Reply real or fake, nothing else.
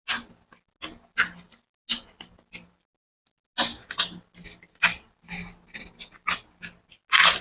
real